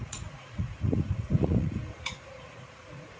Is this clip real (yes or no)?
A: no